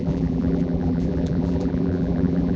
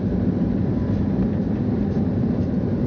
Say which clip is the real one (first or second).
second